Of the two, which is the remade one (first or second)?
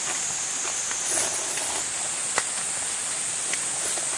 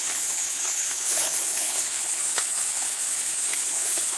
second